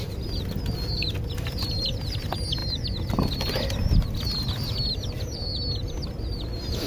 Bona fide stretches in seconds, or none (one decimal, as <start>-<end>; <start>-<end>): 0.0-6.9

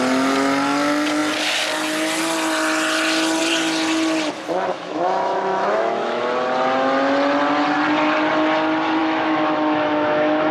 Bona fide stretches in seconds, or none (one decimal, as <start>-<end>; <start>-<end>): 0.0-4.7; 6.2-9.0

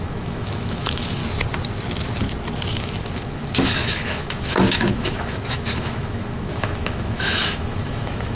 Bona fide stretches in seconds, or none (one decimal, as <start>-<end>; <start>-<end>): 1.2-2.7